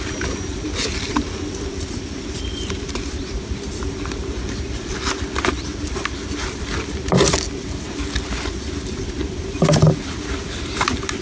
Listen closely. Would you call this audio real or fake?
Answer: fake